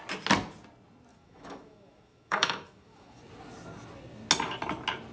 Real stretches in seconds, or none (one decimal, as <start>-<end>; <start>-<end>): 0.0-1.1; 3.2-5.1